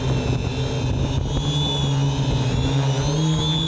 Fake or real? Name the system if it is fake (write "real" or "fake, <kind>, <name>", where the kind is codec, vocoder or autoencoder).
real